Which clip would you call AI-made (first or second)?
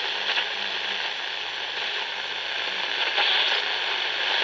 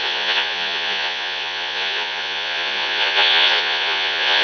second